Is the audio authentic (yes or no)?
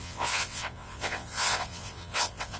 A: no